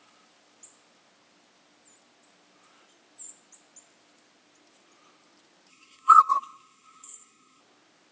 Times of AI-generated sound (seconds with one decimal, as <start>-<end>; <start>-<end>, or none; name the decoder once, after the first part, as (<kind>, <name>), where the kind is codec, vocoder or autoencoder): 5.7-7.6 (codec, SNAC)